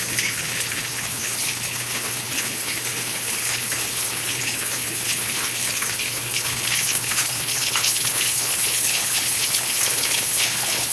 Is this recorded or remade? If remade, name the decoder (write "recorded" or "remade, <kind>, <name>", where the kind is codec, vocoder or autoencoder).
remade, codec, HILCodec